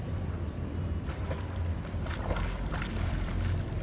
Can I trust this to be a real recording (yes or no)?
no